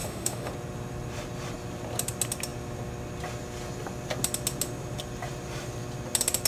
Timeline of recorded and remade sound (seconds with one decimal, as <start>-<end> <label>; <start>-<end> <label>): 0.0-0.5 remade; 0.5-6.5 recorded